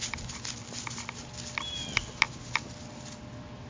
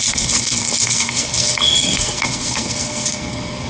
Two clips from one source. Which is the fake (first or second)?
second